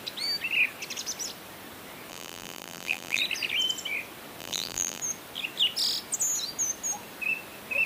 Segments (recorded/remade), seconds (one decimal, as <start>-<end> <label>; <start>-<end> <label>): 0.0-2.1 recorded; 2.1-3.2 remade; 3.2-4.4 recorded; 4.4-5.0 remade; 5.0-7.9 recorded